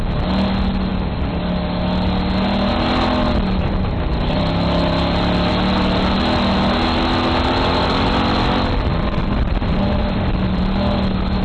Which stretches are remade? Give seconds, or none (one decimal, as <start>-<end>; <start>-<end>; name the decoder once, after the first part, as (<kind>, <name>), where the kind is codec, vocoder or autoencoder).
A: 9.2-10.6 (vocoder, BigVGAN v2)